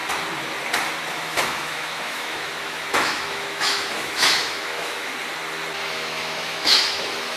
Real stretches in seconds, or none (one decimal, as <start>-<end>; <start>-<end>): 0.0-1.1; 5.1-5.9